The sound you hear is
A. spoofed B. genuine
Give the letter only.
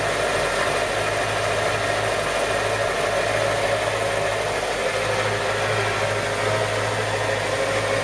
B